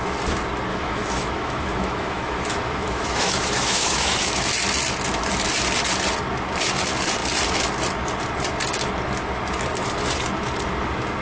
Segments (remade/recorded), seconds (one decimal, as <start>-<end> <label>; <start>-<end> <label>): 0.0-0.7 recorded; 0.7-4.5 remade; 4.5-11.2 recorded